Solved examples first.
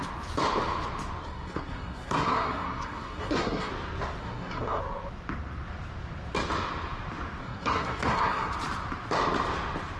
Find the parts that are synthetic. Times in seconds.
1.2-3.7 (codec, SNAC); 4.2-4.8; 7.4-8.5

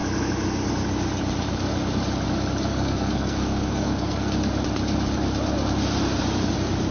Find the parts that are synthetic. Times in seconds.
2.7-4.5 (codec, SNAC)